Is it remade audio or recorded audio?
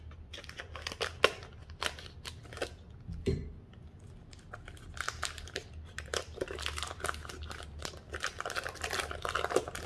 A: recorded